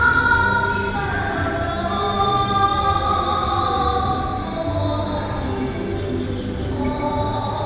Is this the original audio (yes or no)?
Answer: yes